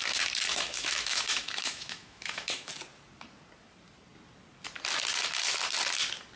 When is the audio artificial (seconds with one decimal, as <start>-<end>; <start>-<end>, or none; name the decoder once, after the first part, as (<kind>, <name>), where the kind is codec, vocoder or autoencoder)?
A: 0.5-2.7 (autoencoder, DAC-VAE)